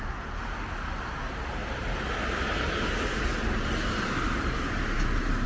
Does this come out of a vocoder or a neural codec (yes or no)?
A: yes